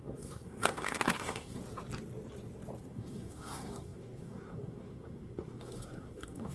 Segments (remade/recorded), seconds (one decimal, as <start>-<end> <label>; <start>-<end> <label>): 0.0-1.6 remade; 1.6-2.8 recorded; 2.8-6.5 remade